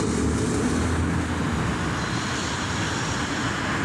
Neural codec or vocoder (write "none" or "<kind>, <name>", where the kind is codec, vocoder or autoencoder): none